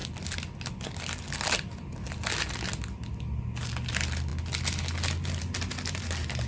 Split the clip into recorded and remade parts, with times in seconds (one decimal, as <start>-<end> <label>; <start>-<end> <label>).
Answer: 0.0-6.5 recorded